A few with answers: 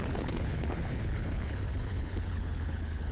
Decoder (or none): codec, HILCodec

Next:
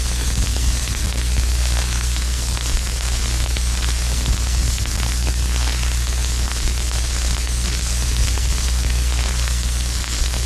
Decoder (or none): codec, SNAC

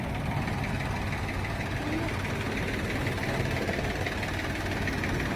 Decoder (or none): none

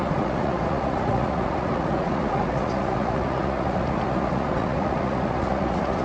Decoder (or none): vocoder, Vocos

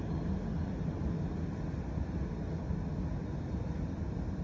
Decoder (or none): none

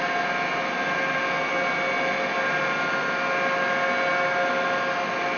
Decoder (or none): none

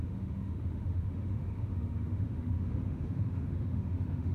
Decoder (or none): autoencoder, DAC-VAE